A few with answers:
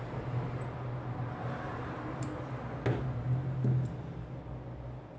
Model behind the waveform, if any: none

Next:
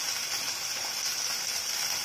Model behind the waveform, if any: none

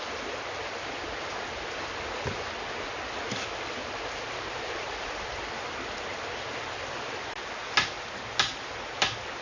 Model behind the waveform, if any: none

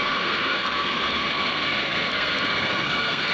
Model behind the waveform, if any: codec, SNAC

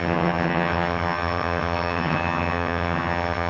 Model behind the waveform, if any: vocoder, HiFi-GAN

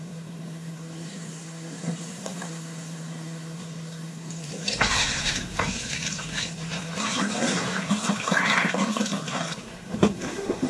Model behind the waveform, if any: codec, SNAC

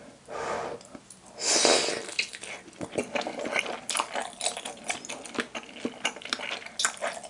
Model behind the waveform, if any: none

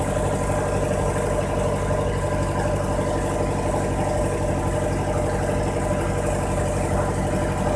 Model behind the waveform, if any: none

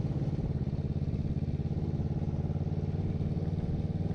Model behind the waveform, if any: none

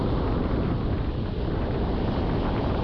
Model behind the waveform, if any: none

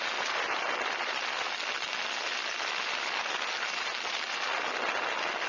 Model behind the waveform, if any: none